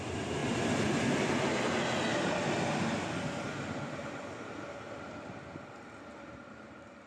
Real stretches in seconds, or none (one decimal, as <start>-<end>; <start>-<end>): 0.0-6.1